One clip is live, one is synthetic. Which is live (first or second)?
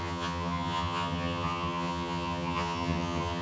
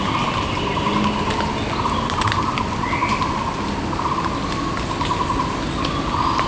second